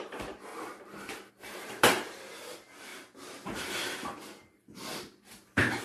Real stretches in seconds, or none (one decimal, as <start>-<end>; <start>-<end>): 0.5-1.3